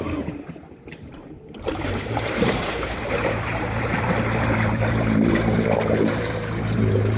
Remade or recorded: remade